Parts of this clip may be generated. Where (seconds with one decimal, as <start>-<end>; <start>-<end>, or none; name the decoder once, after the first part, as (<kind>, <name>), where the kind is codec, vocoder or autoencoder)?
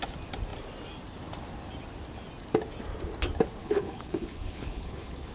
3.6-5.3 (codec, HILCodec)